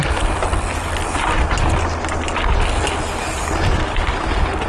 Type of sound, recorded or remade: recorded